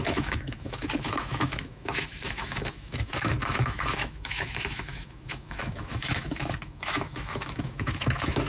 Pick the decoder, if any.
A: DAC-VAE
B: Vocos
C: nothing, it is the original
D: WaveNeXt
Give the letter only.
A